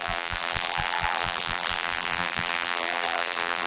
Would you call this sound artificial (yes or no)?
yes